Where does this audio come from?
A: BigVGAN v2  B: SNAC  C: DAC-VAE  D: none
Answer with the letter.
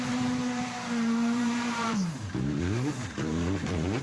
A